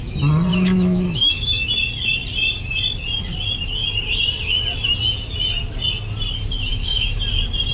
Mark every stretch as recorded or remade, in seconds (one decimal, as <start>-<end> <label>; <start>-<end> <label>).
0.0-0.5 recorded; 0.5-1.7 remade; 1.7-6.7 recorded; 6.7-7.2 remade; 7.2-7.7 recorded